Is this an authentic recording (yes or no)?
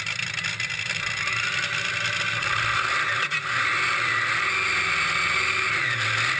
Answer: yes